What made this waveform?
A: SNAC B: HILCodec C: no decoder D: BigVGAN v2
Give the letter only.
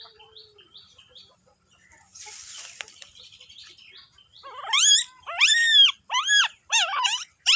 D